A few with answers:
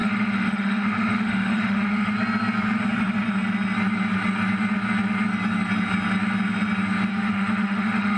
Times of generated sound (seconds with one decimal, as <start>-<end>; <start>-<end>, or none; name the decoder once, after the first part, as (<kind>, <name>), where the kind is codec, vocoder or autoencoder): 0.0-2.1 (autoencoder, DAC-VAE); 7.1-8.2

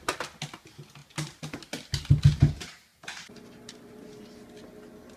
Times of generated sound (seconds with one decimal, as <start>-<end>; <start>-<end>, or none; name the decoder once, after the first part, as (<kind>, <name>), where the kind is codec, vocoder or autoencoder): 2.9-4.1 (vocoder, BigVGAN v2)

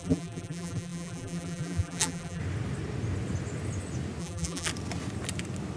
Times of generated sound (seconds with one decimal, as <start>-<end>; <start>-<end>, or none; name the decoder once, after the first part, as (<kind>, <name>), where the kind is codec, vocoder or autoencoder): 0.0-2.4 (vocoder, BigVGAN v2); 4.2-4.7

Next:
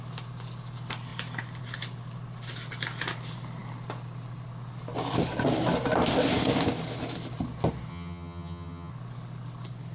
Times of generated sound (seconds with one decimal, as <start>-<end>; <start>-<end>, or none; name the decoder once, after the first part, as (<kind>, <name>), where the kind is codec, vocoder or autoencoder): 7.9-8.9 (vocoder, HiFi-GAN)

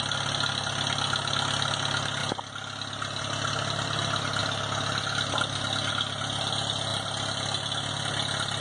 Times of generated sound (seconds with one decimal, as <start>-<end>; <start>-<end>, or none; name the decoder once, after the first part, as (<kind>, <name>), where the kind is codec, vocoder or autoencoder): none